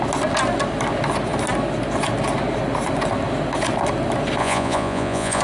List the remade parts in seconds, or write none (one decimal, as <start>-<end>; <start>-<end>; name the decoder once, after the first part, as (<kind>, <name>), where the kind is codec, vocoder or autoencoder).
4.4-5.4 (vocoder, Vocos)